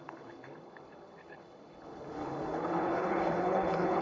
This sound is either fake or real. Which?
fake